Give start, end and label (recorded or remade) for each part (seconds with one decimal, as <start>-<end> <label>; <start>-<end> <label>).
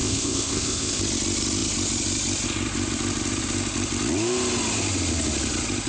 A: 0.0-1.0 remade; 1.0-5.9 recorded